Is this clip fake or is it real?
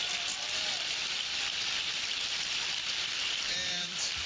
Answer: fake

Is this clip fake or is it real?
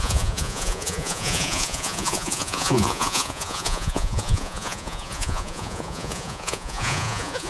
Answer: fake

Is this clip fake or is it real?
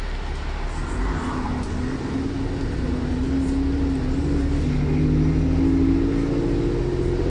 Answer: real